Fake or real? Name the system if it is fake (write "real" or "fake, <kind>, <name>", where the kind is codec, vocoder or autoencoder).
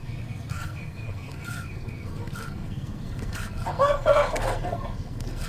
fake, codec, SNAC